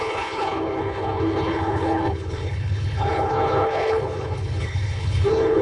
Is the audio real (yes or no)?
no